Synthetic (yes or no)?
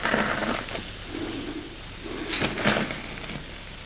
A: no